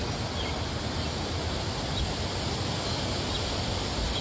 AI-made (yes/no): no